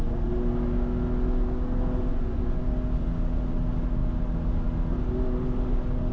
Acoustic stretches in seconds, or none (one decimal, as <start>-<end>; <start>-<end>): 0.0-2.1; 2.6-6.1